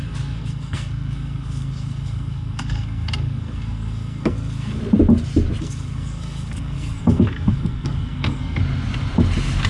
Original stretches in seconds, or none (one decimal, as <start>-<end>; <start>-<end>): 4.8-5.6; 8.6-9.7